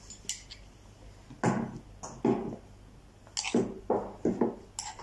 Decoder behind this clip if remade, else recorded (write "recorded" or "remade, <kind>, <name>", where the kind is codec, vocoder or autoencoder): recorded